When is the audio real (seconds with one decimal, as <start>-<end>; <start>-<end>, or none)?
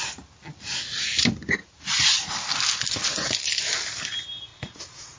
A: 0.0-1.6; 2.3-4.5